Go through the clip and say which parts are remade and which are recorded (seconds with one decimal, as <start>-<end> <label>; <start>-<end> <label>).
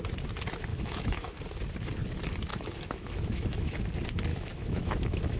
0.0-0.7 recorded; 0.7-1.3 remade; 1.3-2.5 recorded; 2.5-3.8 remade; 3.8-4.3 recorded; 4.3-5.4 remade